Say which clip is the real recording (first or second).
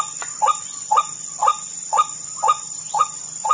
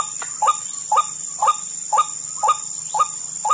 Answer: second